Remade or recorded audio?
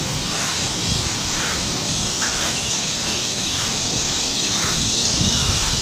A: remade